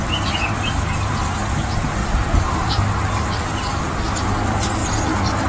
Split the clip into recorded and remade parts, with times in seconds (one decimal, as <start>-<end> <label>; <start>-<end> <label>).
0.0-2.0 recorded; 2.0-3.8 remade; 3.8-4.8 recorded; 4.8-5.5 remade